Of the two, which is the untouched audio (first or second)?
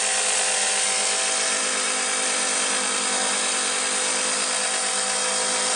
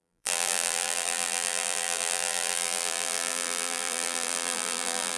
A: first